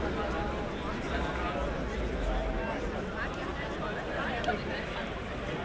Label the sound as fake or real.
real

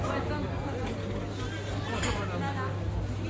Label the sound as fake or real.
real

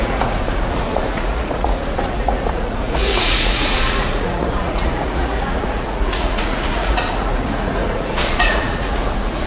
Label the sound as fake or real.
fake